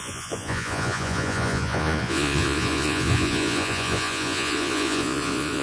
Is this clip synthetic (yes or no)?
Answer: yes